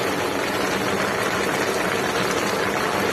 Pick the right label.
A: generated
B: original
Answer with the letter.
B